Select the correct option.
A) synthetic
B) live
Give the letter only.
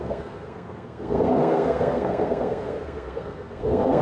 A